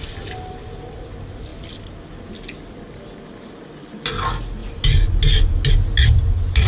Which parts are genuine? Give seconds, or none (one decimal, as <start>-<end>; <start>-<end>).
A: 0.0-6.7